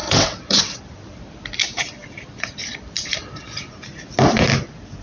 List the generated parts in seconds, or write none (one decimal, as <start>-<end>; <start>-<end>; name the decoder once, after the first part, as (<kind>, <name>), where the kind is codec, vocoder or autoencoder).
0.0-0.8 (vocoder, WaveNeXt)